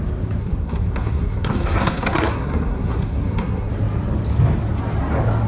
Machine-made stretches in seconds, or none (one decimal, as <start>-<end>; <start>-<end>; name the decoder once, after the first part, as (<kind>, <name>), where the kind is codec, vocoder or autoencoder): 0.4-3.7 (codec, SNAC)